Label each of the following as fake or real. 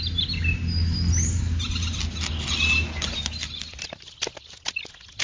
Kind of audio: real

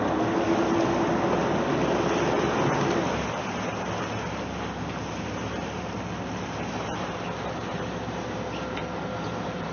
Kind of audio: real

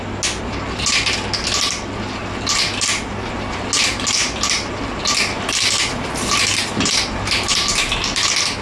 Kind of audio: real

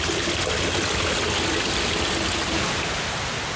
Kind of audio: real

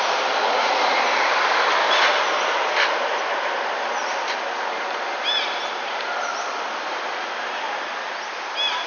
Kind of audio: real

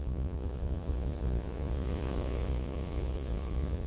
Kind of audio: fake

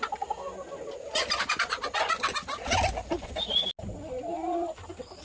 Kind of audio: real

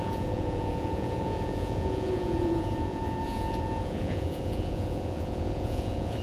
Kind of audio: fake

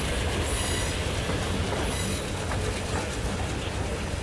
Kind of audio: real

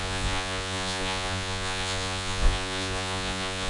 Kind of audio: fake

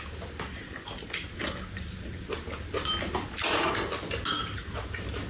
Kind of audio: real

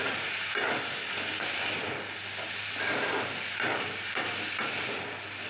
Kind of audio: real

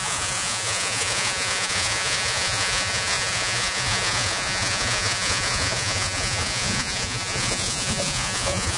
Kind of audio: fake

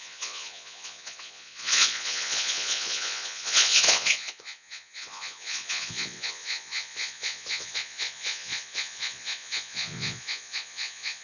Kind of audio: fake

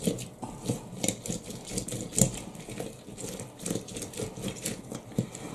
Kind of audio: real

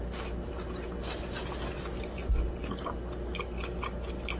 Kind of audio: real